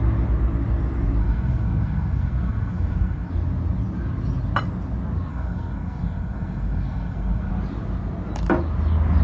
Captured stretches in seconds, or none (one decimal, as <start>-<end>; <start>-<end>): 0.0-1.2; 3.3-5.3; 7.5-9.2